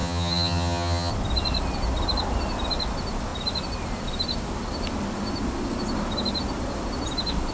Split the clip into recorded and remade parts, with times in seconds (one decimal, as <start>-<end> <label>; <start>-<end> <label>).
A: 0.0-1.1 remade; 1.1-7.5 recorded